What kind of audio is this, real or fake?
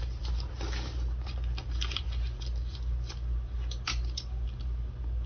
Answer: real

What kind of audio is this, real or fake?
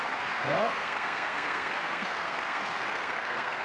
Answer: fake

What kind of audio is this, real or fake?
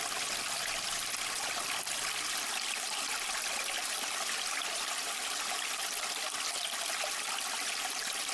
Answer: real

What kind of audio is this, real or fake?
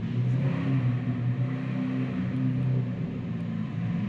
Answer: real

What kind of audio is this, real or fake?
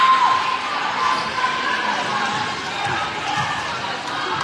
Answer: real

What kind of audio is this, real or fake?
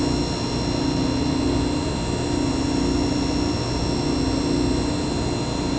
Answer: real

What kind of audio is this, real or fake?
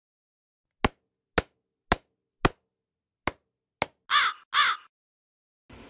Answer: real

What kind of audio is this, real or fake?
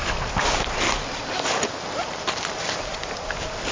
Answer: real